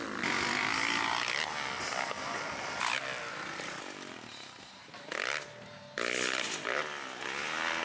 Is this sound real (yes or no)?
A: yes